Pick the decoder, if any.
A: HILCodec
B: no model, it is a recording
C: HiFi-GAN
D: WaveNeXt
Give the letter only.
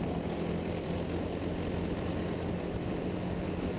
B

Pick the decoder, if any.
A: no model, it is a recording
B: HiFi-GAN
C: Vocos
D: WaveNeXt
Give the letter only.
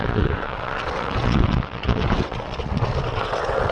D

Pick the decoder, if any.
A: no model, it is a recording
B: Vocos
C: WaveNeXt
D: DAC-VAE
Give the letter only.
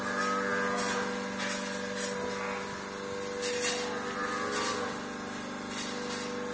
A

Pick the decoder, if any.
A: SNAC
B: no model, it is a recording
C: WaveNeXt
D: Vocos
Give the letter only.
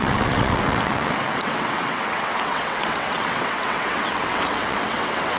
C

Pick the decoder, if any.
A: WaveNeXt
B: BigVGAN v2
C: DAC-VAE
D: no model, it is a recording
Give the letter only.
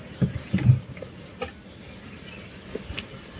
D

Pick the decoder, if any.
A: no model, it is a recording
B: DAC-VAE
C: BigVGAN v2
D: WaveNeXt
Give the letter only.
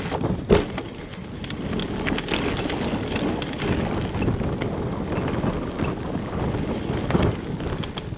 A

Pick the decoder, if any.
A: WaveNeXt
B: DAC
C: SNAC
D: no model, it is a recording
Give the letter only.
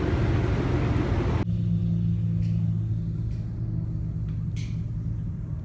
D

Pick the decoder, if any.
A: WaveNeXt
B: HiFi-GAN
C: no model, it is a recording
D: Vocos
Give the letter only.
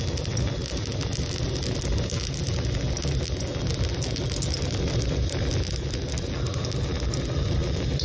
C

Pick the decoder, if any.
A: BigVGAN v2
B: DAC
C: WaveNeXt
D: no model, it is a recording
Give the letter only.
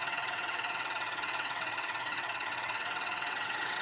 C